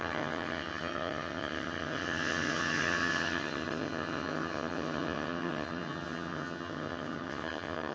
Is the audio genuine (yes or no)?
no